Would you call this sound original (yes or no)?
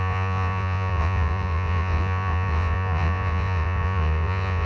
no